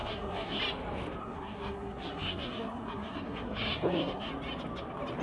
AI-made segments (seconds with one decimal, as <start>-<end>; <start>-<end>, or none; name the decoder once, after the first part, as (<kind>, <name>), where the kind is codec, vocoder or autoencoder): 0.0-0.6 (codec, SNAC); 1.2-4.3